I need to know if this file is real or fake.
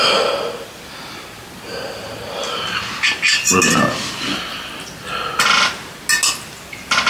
real